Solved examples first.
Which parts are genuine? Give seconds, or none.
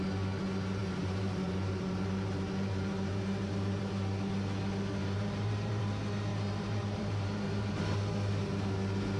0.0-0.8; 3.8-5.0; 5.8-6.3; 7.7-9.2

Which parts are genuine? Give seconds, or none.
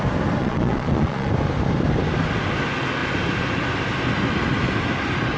0.0-0.4; 1.3-5.4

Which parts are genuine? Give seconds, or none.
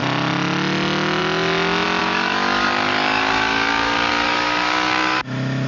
0.0-2.0; 5.2-5.7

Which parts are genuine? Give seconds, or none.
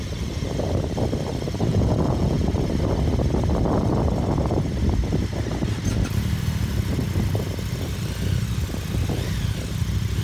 0.0-1.7; 2.5-10.2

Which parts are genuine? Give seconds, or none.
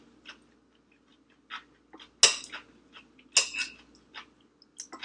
0.0-5.0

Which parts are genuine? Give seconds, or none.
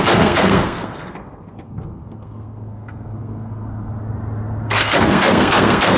3.9-4.6